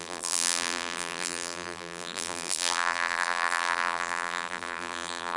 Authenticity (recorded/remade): remade